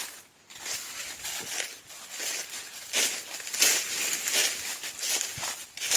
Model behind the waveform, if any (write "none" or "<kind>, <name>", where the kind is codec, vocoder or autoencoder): none